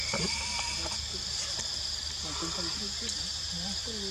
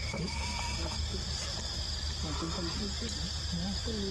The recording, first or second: second